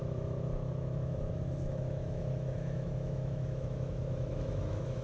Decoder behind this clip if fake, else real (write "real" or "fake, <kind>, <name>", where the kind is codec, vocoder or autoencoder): fake, autoencoder, DAC-VAE